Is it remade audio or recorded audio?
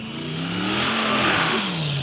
remade